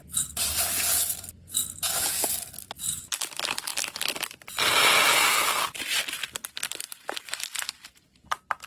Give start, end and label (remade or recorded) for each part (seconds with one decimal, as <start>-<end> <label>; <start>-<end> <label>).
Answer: 0.0-8.7 recorded